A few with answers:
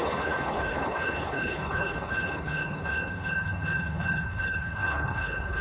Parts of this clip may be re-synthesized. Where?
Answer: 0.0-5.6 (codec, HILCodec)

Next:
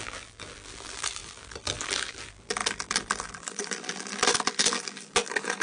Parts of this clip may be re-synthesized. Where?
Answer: 0.0-5.6 (vocoder, BigVGAN v2)

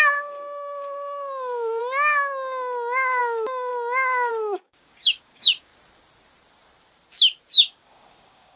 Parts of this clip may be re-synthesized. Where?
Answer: 0.0-1.8 (codec, DAC); 3.2-3.7; 4.3-5.7; 7.5-8.6

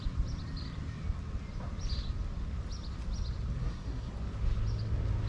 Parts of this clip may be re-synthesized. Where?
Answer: 3.6-4.1 (codec, SNAC)

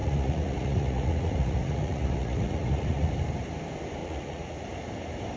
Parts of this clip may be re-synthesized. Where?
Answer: 0.0-3.1 (vocoder, Vocos); 4.0-4.6

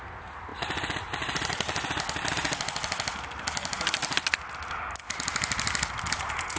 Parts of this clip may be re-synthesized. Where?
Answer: none

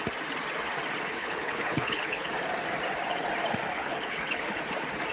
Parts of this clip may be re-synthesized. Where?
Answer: 1.1-2.3 (codec, HILCodec); 3.7-4.6

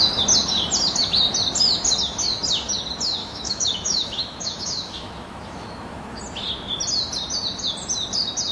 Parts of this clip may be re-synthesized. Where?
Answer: 3.2-6.2 (autoencoder, DAC-VAE)